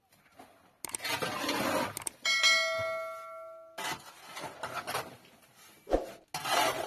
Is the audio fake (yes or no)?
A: no